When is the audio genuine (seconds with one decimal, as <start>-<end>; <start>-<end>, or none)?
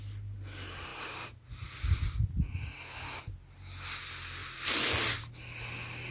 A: 0.0-6.1